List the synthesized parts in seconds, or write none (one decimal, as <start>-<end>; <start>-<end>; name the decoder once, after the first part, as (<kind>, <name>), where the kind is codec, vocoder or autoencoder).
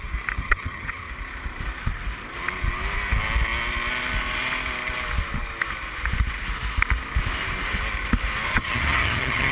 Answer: 0.4-1.1 (vocoder, HiFi-GAN); 8.5-9.5